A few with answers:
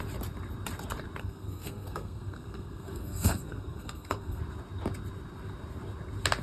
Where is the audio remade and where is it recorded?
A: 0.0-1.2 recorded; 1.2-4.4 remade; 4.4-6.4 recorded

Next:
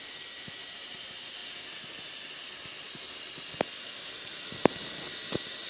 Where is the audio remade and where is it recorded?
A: 0.0-1.4 remade; 1.4-4.0 recorded; 4.0-5.7 remade